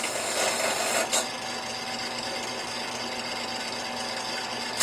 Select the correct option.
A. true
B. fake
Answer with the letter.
A